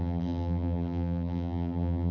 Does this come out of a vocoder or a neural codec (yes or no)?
yes